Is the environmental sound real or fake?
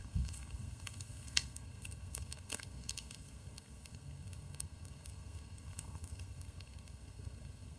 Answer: fake